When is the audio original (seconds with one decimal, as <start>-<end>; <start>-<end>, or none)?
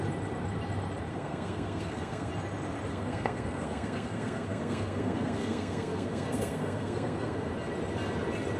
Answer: 0.0-1.1; 2.3-2.9; 7.5-8.6